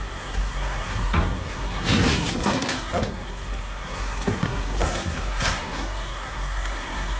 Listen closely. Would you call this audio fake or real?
fake